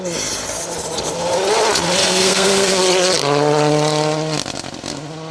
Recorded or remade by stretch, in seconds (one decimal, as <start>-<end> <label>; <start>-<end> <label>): 0.0-2.0 recorded; 2.0-2.8 remade; 2.8-5.3 recorded